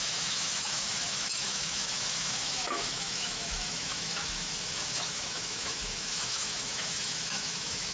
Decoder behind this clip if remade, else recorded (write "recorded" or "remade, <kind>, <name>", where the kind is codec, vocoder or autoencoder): remade, autoencoder, DAC-VAE